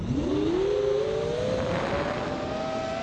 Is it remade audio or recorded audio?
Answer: recorded